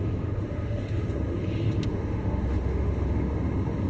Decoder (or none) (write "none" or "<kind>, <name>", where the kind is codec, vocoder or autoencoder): autoencoder, DAC-VAE